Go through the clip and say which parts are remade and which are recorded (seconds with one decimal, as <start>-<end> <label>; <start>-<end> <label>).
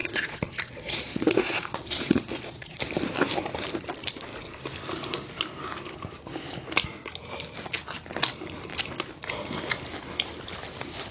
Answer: 0.0-2.8 remade; 2.8-11.1 recorded